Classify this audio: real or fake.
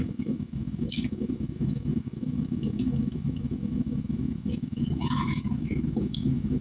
fake